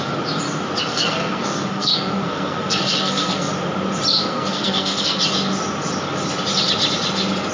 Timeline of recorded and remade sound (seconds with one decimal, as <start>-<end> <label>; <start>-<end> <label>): 0.0-0.9 recorded; 0.9-3.5 remade; 3.5-4.1 recorded; 4.1-5.2 remade; 5.2-7.5 recorded